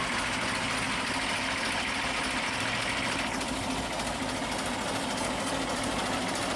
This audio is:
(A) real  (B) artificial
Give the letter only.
A